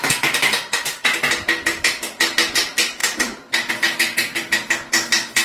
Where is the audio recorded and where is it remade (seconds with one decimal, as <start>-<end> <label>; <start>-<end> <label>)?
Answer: 0.0-5.4 recorded